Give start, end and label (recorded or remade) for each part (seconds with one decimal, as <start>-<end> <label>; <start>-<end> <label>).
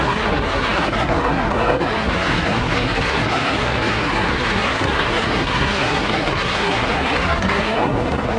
0.0-8.4 remade